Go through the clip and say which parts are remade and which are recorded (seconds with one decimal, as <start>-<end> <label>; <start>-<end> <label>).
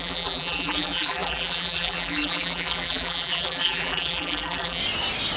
0.0-4.8 remade; 4.8-5.4 recorded